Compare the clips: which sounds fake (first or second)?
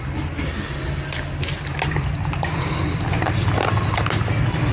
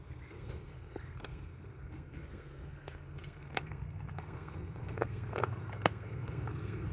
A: second